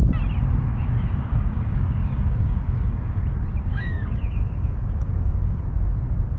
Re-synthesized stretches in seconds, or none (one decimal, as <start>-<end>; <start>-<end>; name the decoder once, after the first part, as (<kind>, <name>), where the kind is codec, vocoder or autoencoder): 0.7-3.2 (codec, DAC); 3.7-5.6